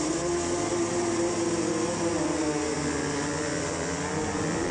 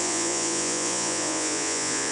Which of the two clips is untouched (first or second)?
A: first